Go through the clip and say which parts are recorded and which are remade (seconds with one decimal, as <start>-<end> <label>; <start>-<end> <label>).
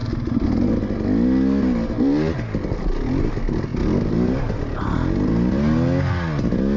0.0-6.8 recorded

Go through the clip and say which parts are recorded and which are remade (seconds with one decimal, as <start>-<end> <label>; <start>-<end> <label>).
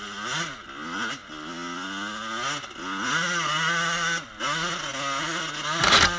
0.0-6.2 recorded